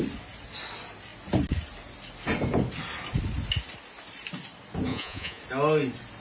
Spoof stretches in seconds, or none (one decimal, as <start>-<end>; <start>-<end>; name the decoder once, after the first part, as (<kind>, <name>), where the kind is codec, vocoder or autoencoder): 4.9-5.4 (vocoder, Vocos)